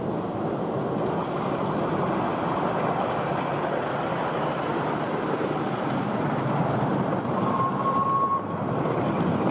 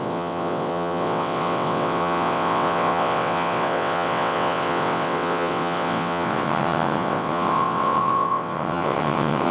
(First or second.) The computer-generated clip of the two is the second